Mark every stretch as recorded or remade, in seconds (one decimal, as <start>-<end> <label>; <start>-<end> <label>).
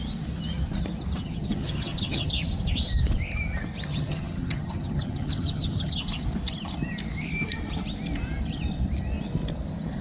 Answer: 0.0-1.2 recorded; 1.2-2.3 remade; 2.3-3.9 recorded; 3.9-5.9 remade; 5.9-10.0 recorded